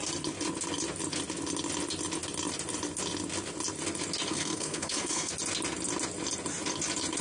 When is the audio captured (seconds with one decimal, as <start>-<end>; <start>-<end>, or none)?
0.0-4.3; 5.3-7.2